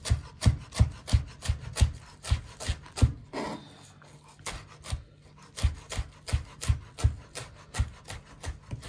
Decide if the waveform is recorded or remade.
recorded